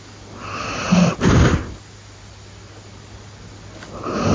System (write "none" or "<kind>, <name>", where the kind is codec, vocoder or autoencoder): none